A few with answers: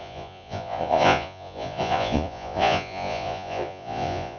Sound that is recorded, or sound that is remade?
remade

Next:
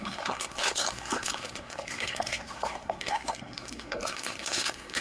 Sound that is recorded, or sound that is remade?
remade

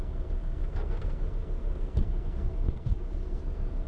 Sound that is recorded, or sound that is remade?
remade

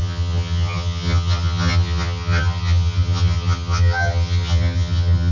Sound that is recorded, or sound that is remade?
remade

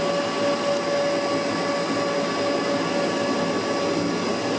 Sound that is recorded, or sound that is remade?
recorded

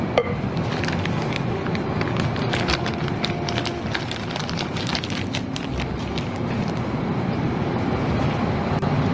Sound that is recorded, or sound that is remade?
remade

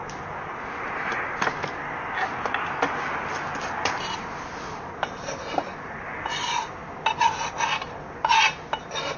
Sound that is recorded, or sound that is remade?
recorded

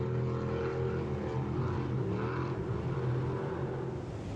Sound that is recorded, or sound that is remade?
recorded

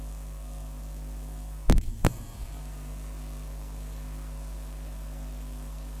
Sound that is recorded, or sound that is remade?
remade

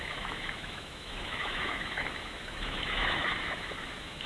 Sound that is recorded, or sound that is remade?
remade